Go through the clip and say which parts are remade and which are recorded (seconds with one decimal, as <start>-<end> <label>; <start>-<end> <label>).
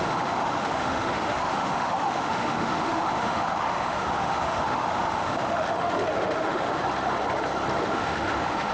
0.0-6.8 remade; 6.8-7.8 recorded; 7.8-8.7 remade